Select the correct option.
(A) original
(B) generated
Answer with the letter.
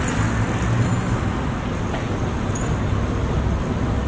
A